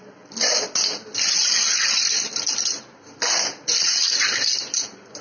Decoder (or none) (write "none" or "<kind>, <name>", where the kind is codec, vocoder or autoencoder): none